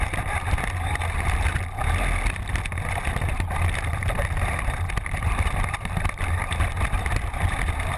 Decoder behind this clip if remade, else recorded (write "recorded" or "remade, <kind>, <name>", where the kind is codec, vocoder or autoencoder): recorded